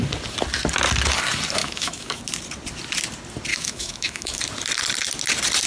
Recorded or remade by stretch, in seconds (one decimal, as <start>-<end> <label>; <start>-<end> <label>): 0.0-1.6 recorded; 1.6-2.2 remade; 2.2-3.5 recorded; 3.5-4.4 remade; 4.4-5.7 recorded